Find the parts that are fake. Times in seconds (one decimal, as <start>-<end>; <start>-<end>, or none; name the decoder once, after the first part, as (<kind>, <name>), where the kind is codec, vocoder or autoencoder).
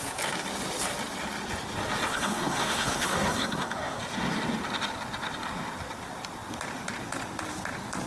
2.1-4.0 (codec, SNAC)